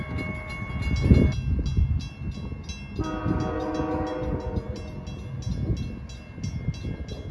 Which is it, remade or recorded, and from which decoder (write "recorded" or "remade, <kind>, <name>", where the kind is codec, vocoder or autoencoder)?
recorded